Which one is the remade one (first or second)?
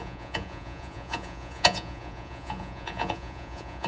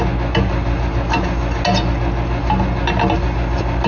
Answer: first